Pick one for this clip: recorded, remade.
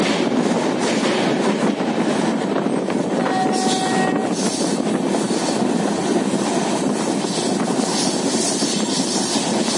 recorded